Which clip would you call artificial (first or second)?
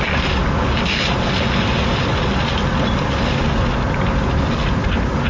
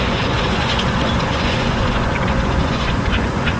second